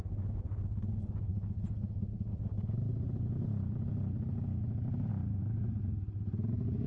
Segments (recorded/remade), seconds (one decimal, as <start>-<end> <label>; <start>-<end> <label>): 0.0-6.9 recorded